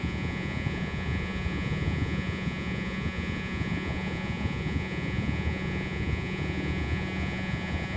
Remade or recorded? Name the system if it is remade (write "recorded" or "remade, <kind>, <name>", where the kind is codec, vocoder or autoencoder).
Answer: remade, vocoder, Vocos